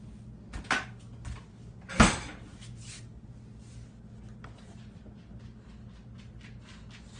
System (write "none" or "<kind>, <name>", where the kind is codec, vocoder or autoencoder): none